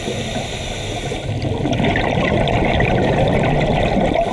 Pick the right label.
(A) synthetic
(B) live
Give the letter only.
B